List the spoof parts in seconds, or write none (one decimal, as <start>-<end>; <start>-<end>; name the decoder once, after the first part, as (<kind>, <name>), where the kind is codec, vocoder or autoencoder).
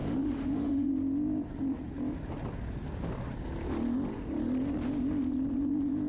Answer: 0.0-0.9 (autoencoder, DAC-VAE)